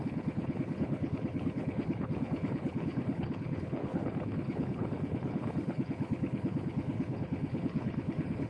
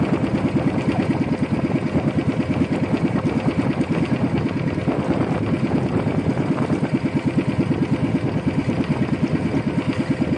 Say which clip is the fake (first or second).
first